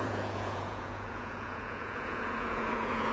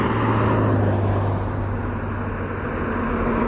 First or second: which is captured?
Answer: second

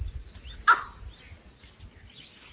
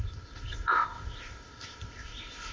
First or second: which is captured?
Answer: first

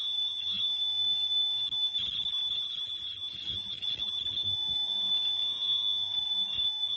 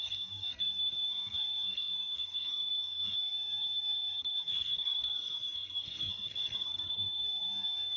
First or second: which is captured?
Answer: first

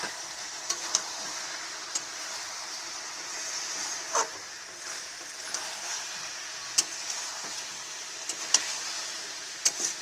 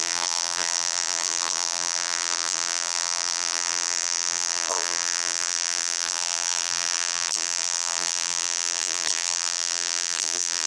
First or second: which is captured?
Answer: first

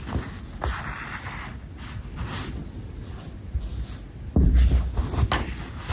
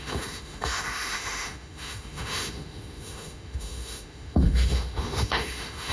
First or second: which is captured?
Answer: first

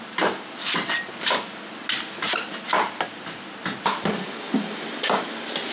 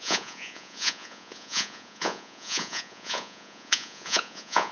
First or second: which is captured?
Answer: first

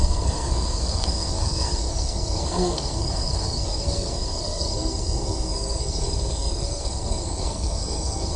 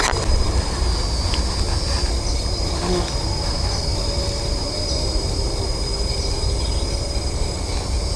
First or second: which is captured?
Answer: second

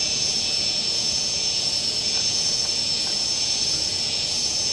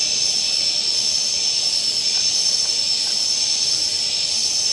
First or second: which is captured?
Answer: second